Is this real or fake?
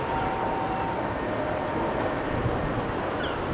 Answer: fake